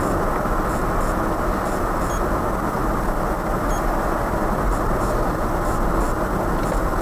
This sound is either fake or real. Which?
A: real